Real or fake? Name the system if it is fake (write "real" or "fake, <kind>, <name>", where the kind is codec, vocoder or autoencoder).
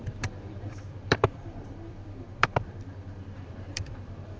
fake, vocoder, BigVGAN v2